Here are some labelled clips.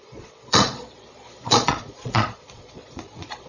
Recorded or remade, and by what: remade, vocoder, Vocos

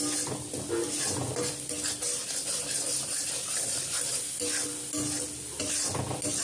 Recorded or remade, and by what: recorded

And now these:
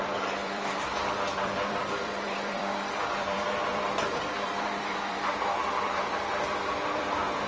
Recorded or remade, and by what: remade, vocoder, BigVGAN v2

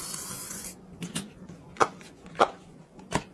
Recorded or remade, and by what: remade, vocoder, Vocos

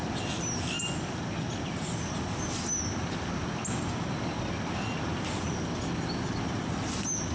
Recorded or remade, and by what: recorded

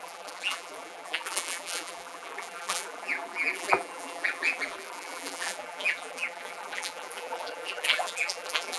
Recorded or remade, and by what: remade, vocoder, BigVGAN v2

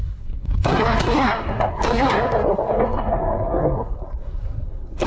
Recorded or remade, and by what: remade, codec, SNAC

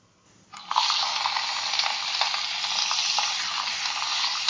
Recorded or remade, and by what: recorded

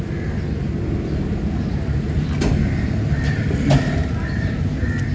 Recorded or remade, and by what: recorded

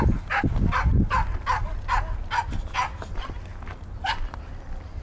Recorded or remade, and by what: recorded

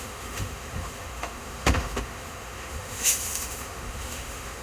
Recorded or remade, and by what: remade, autoencoder, DAC-VAE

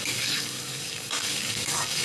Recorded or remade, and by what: remade, codec, DAC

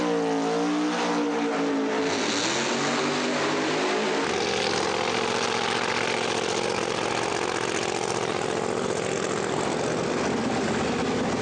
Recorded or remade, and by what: recorded